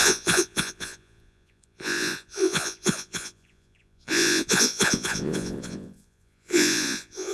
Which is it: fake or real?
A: fake